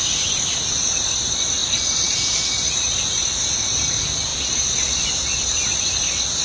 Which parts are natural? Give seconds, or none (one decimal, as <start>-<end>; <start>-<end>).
0.0-6.4